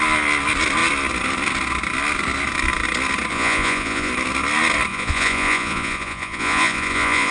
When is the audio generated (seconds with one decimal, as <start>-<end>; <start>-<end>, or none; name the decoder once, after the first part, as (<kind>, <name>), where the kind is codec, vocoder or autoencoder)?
3.3-4.1 (vocoder, Vocos); 4.9-7.3